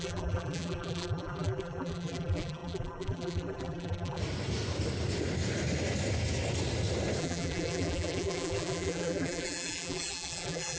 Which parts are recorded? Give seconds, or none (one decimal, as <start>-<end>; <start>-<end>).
4.2-7.2